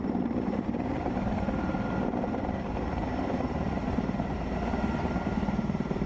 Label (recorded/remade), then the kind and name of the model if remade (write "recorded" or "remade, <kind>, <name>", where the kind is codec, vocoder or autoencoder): remade, vocoder, BigVGAN v2